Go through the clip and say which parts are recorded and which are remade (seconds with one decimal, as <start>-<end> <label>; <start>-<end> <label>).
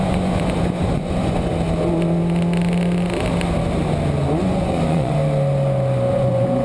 0.0-1.5 remade; 1.5-4.4 recorded; 4.4-5.2 remade; 5.2-6.1 recorded; 6.1-6.6 remade